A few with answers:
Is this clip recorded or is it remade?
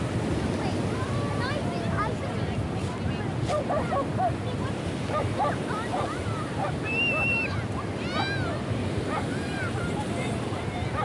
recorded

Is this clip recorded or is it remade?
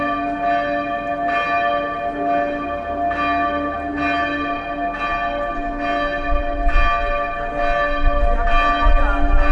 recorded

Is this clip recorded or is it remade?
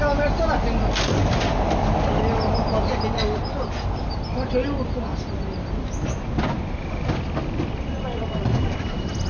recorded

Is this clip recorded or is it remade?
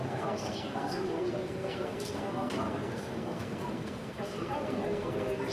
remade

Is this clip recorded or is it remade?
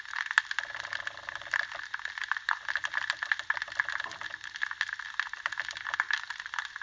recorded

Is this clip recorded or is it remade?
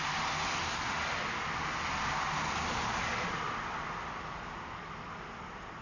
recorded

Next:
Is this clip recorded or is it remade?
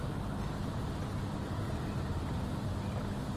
recorded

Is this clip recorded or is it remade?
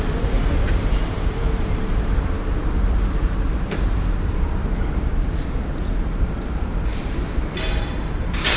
remade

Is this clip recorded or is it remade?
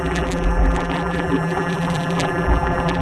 remade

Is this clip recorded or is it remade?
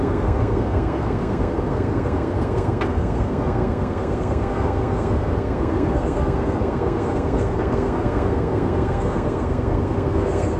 remade